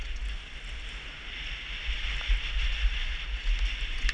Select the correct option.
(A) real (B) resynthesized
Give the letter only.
A